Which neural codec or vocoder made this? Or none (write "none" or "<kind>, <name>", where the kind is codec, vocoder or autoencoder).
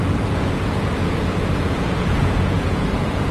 vocoder, Vocos